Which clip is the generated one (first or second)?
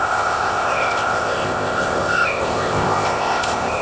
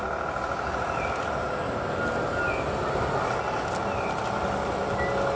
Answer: first